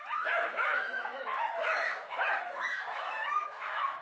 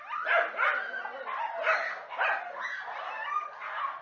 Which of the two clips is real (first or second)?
second